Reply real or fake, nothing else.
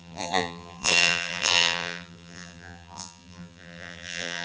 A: fake